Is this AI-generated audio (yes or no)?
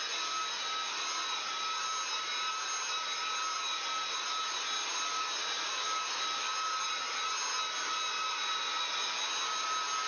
no